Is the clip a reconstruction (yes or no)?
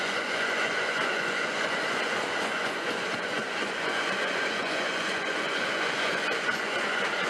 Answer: yes